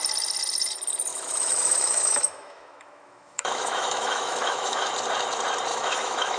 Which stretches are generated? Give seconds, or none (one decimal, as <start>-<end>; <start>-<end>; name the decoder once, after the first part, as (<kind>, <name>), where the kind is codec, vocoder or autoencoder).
1.1-4.9 (autoencoder, DAC-VAE); 5.7-6.4